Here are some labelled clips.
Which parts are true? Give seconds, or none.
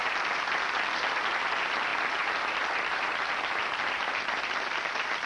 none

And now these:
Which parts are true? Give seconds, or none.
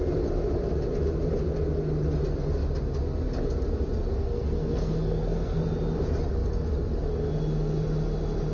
0.0-4.1; 5.6-8.5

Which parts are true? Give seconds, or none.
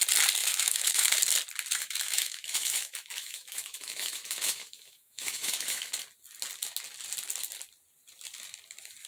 0.0-0.4; 1.1-1.8; 5.9-9.1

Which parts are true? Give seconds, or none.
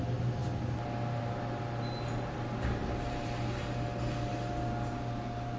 0.0-5.6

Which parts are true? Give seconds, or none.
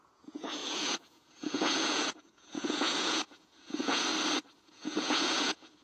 4.1-4.6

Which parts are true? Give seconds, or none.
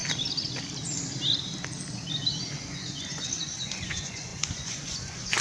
0.0-2.5